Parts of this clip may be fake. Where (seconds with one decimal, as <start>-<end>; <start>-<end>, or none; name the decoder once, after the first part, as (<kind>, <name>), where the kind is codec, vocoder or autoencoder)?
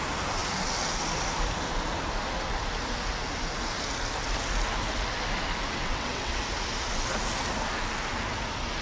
5.8-6.4 (vocoder, WaveNeXt)